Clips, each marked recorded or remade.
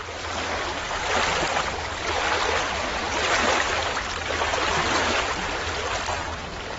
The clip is recorded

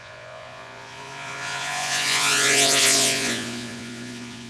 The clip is remade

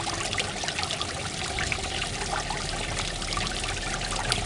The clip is recorded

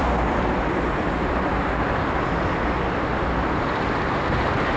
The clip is recorded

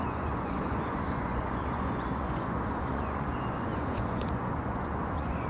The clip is remade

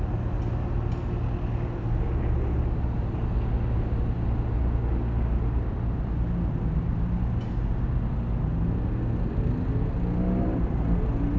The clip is recorded